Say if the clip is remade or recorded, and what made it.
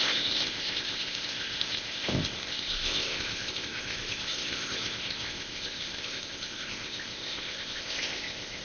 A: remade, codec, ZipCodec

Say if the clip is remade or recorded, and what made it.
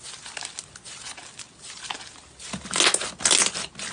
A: recorded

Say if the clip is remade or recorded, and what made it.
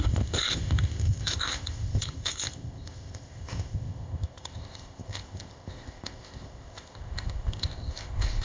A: remade, codec, ZipCodec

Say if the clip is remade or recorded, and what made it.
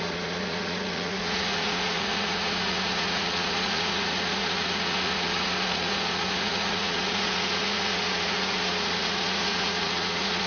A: remade, vocoder, Vocos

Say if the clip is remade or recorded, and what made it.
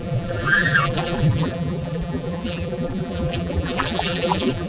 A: remade, vocoder, BigVGAN v2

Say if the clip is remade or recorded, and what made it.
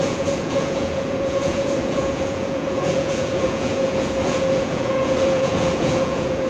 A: remade, vocoder, Vocos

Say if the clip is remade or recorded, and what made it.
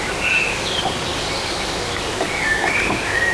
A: remade, codec, DAC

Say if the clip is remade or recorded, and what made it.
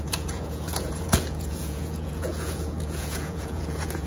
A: remade, vocoder, Vocos